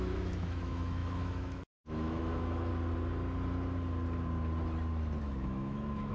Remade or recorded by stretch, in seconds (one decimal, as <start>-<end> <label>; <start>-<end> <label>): 0.0-2.7 remade; 2.7-5.2 recorded; 5.2-6.1 remade